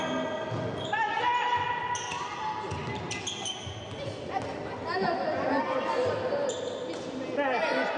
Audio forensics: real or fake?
real